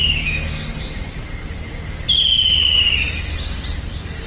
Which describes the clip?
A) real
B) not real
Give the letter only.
A